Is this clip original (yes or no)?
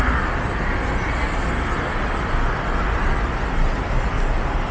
yes